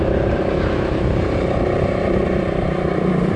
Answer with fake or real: fake